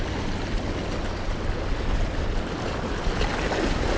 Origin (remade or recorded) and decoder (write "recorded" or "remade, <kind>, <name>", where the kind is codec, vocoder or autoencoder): recorded